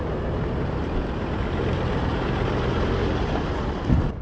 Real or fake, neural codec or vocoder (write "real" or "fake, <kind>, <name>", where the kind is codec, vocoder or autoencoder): fake, vocoder, BigVGAN v2